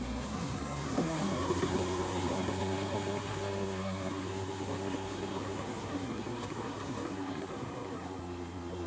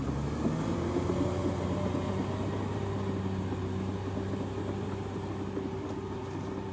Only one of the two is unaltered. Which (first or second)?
second